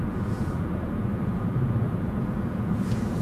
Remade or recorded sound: remade